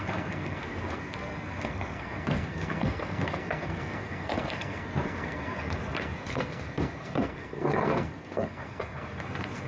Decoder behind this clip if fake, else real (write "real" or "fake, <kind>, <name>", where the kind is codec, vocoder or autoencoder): fake, codec, SNAC